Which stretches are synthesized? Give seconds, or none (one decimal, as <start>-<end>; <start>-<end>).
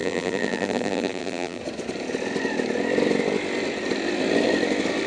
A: 0.0-1.6